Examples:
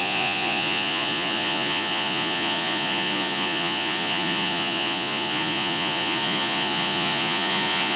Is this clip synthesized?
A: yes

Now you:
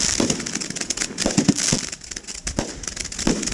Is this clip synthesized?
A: no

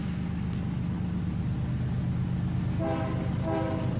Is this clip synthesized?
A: no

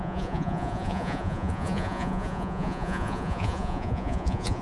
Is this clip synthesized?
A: yes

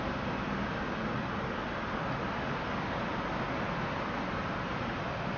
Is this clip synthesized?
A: no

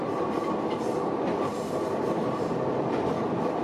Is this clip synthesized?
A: no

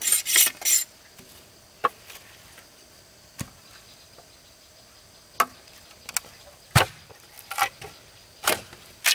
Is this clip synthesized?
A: no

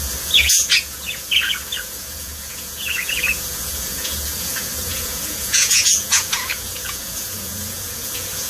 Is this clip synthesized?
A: yes